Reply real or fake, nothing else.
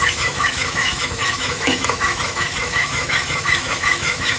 fake